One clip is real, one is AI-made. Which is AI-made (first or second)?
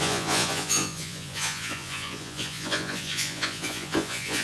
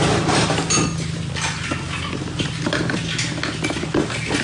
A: first